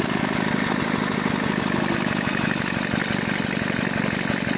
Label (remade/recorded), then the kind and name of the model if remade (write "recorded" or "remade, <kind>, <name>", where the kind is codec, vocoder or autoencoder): recorded